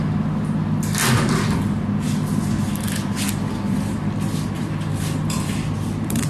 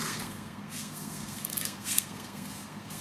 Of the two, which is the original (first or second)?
first